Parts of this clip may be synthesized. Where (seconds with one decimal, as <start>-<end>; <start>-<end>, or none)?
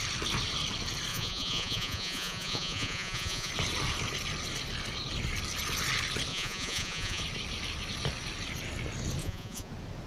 1.1-3.5; 6.3-7.2; 9.2-9.7